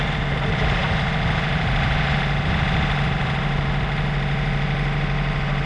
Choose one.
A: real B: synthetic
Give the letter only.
A